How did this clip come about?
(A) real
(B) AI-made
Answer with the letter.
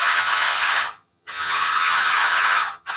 B